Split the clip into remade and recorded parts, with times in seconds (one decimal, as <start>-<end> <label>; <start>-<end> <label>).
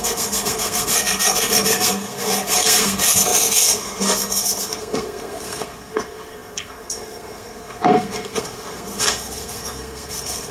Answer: 0.0-10.5 remade